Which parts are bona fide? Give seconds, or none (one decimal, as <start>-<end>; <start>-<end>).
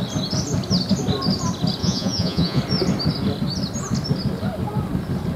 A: 0.0-1.8; 2.6-5.4